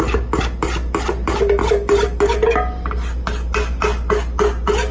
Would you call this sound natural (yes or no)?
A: yes